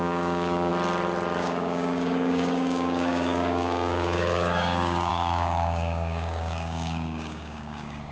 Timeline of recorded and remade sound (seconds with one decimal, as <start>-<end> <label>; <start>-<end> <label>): 0.0-0.7 remade; 0.7-1.4 recorded; 1.4-8.1 remade